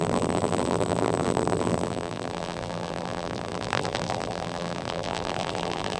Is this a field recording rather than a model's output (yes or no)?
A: no